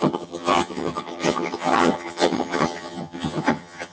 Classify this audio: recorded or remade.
remade